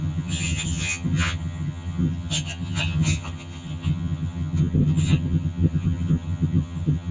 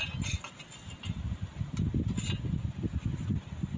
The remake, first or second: first